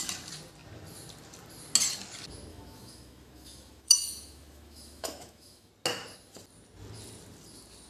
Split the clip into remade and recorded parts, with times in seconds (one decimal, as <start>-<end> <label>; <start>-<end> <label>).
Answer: 0.0-2.5 recorded; 2.5-5.7 remade; 5.7-7.9 recorded